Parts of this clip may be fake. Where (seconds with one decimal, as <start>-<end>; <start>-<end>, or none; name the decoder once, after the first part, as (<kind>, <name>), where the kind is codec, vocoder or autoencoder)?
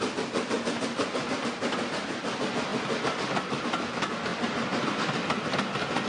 none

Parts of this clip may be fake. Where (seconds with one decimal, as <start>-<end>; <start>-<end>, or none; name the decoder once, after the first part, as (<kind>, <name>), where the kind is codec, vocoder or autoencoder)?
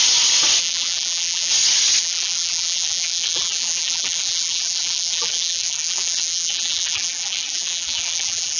0.6-1.5 (vocoder, BigVGAN v2); 2.0-8.6